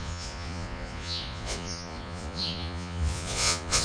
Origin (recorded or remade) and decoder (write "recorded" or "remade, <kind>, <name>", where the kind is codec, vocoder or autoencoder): remade, vocoder, Vocos